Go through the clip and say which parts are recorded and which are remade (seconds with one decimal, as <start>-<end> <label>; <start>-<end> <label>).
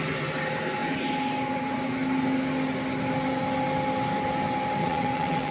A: 0.0-4.8 recorded; 4.8-5.5 remade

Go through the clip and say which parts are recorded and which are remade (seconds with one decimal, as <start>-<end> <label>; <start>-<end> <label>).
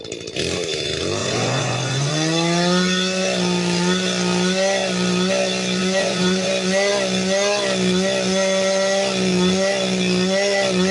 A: 0.0-1.2 recorded; 1.2-2.1 remade; 2.1-5.8 recorded; 5.8-6.5 remade; 6.5-10.9 recorded